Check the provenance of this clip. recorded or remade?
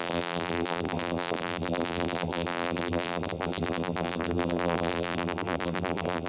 remade